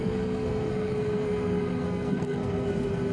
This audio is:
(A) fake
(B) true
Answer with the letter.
A